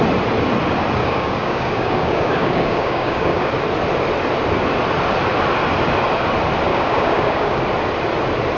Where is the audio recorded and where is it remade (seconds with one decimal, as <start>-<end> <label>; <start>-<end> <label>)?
0.0-1.0 recorded; 1.0-3.5 remade; 3.5-6.7 recorded; 6.7-7.6 remade; 7.6-8.6 recorded